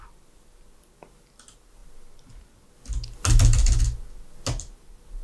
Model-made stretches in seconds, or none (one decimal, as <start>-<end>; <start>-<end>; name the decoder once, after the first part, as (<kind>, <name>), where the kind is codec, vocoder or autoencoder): none